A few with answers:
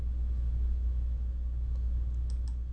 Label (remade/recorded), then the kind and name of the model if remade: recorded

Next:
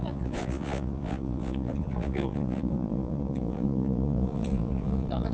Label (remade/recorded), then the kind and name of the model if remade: remade, vocoder, Vocos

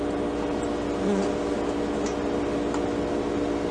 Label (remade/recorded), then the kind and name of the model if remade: recorded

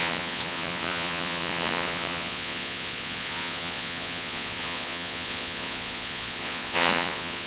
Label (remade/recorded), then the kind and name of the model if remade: remade, vocoder, Vocos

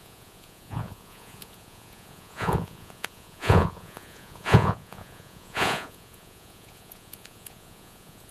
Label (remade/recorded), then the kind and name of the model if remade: remade, vocoder, Vocos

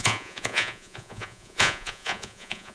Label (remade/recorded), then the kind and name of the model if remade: remade, vocoder, Vocos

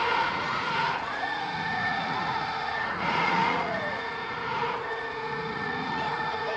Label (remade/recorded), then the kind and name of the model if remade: remade, vocoder, Vocos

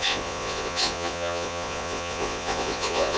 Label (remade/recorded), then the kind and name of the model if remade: remade, vocoder, Vocos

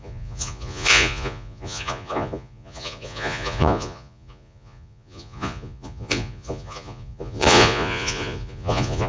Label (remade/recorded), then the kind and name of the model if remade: remade, vocoder, Vocos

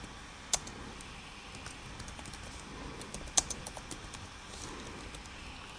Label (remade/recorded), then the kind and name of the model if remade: recorded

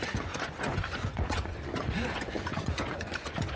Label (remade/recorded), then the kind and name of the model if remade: remade, vocoder, Vocos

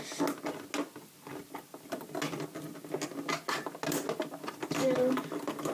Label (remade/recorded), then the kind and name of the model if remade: recorded